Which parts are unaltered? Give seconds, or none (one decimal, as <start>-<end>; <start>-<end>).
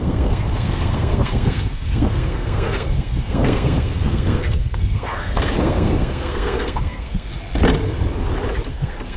7.3-8.7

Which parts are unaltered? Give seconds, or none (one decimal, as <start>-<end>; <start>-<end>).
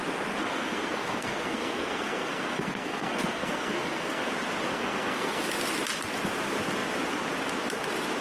0.0-0.4; 4.3-4.7; 5.4-8.2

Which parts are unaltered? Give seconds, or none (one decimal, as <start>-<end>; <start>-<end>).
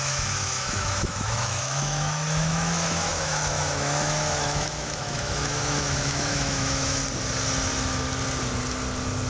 7.0-9.3